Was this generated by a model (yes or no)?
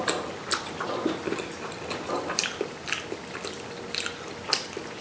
no